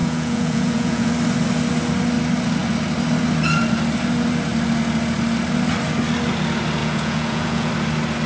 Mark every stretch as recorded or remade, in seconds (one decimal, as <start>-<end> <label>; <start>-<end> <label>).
0.0-1.1 remade; 1.1-6.8 recorded; 6.8-7.7 remade; 7.7-8.3 recorded